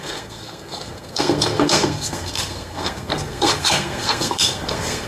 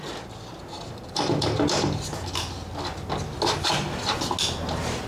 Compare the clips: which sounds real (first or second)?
second